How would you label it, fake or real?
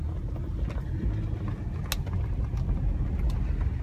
real